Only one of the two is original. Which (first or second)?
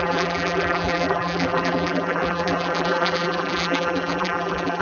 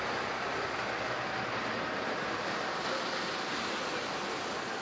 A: second